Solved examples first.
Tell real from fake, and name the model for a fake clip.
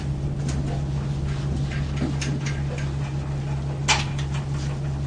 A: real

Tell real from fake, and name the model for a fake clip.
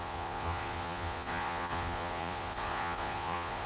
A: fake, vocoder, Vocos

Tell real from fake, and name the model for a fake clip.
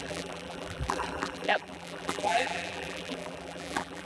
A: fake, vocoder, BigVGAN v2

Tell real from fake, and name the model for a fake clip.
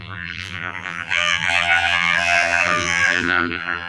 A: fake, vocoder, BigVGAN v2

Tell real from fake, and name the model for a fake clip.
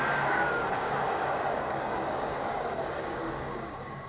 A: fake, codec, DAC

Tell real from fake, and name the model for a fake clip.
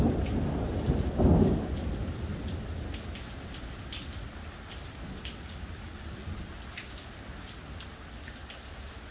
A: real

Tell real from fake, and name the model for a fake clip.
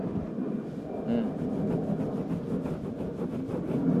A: real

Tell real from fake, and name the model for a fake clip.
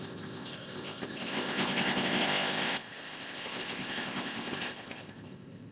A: fake, codec, ZipCodec